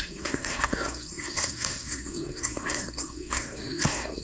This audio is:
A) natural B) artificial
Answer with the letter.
B